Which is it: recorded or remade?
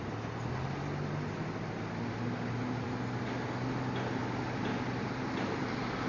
recorded